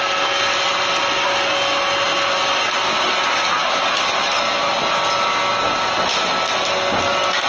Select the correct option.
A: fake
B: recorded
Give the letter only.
B